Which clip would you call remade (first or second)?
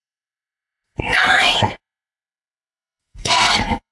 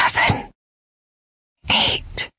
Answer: first